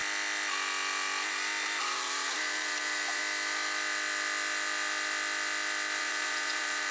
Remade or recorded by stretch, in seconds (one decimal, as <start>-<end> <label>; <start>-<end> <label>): 0.0-1.8 recorded; 1.8-3.2 remade; 3.2-6.0 recorded; 6.0-6.9 remade